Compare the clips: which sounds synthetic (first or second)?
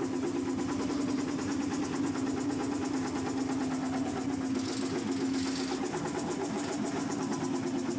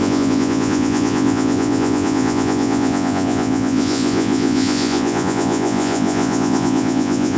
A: second